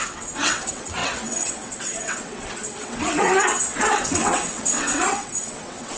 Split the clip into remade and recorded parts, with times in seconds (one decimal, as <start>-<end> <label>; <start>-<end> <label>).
0.0-6.0 remade